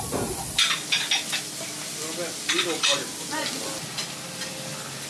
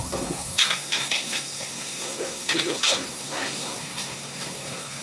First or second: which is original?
first